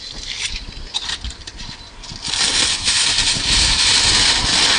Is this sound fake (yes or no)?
no